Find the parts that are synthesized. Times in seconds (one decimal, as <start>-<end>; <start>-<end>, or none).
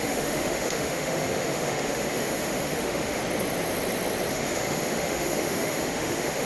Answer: 0.0-3.2; 4.3-6.5